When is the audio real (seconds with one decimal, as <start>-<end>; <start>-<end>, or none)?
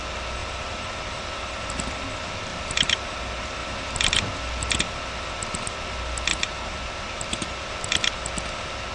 0.0-0.4; 1.7-2.5; 3.1-6.3; 7.7-8.9